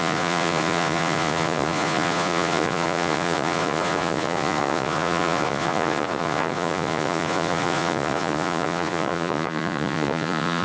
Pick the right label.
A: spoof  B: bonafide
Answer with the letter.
A